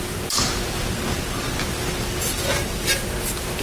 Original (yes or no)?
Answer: yes